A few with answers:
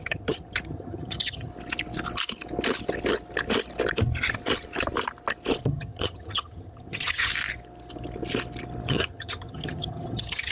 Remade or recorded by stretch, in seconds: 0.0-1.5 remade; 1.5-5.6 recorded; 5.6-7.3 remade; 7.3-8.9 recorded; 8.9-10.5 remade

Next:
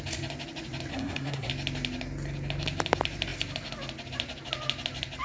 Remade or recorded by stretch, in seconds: 0.0-0.9 recorded; 0.9-1.5 remade; 1.5-5.2 recorded